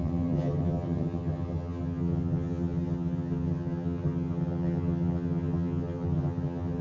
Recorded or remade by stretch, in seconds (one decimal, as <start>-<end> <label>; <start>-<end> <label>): 0.0-6.8 remade